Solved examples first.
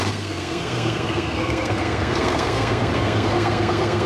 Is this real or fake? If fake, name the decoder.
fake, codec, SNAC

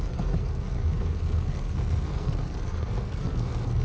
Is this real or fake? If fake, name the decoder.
fake, codec, SNAC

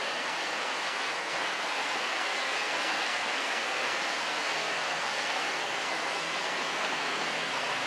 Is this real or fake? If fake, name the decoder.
fake, codec, SNAC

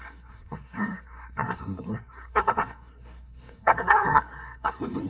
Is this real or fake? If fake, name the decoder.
fake, codec, SNAC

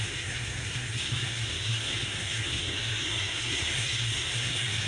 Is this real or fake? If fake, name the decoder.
fake, codec, SNAC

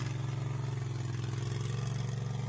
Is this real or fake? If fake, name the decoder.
real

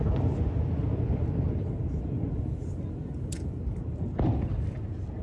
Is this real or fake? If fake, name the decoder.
real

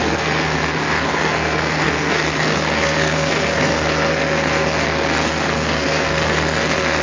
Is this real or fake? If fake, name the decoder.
fake, codec, SNAC